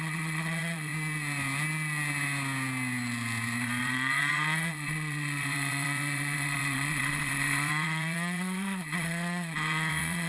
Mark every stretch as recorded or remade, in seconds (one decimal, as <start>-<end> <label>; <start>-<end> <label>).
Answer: 0.0-0.9 remade; 0.9-3.8 recorded; 3.8-10.3 remade